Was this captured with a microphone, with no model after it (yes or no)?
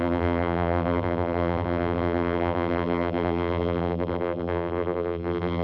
no